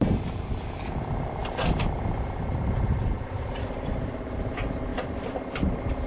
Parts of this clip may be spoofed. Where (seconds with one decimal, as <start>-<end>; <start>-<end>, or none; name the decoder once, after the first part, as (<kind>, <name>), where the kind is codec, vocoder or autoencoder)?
0.0-6.1 (vocoder, BigVGAN v2)